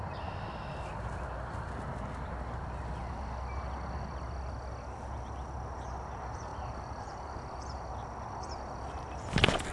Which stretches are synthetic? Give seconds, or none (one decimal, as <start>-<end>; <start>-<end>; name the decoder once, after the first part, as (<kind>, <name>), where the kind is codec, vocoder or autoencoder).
6.5-7.9 (vocoder, BigVGAN v2)